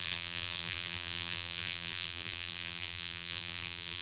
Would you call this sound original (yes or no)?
no